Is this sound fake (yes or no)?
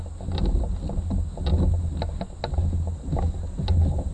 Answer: no